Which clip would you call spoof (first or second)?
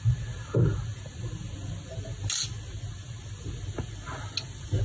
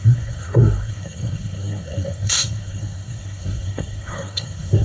second